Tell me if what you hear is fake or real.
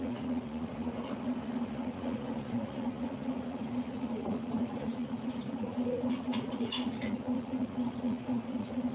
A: fake